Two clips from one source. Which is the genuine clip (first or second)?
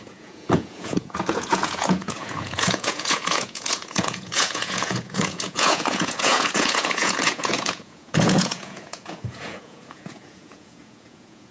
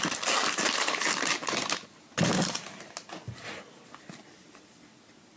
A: second